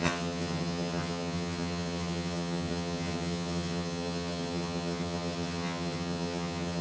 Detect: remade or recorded remade